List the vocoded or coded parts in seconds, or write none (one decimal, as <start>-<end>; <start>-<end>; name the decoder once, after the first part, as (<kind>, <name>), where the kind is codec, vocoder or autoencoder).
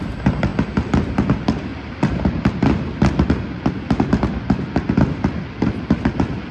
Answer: none